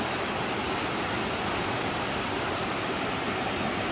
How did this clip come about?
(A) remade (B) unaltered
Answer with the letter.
B